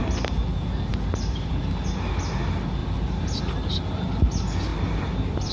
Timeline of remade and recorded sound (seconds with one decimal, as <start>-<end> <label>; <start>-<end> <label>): 0.0-0.9 recorded; 0.9-1.5 remade; 1.5-2.8 recorded; 2.8-3.4 remade; 3.4-4.7 recorded; 4.7-5.5 remade